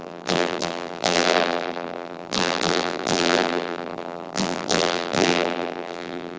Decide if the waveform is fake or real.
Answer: fake